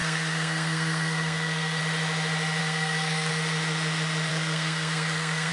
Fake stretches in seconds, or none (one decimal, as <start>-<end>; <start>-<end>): 0.0-1.8; 2.6-3.3; 4.3-5.5